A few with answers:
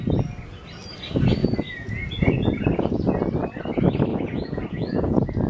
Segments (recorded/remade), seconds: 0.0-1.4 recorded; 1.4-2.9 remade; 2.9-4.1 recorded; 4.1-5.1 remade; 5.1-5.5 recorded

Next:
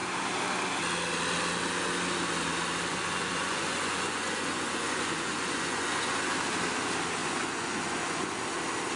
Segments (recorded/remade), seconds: 0.0-2.9 recorded; 2.9-6.4 remade; 6.4-7.2 recorded; 7.2-8.3 remade; 8.3-9.0 recorded

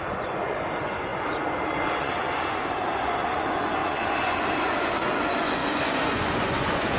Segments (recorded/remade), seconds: 0.0-7.0 remade

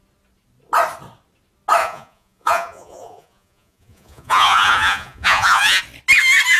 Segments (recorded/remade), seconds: 0.0-1.8 recorded; 1.8-5.8 remade; 5.8-6.6 recorded

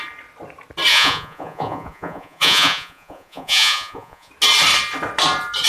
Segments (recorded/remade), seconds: 0.0-0.9 recorded; 0.9-4.3 remade; 4.3-5.7 recorded

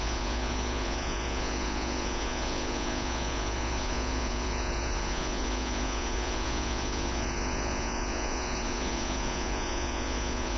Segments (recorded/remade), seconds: 0.0-10.6 remade